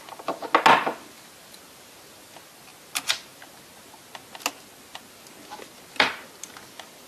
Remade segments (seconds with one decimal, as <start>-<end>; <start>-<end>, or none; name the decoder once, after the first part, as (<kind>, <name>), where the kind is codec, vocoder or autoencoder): none